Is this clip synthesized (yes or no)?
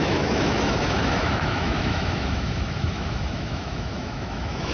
yes